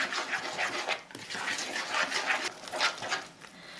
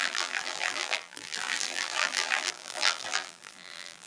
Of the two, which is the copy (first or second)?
second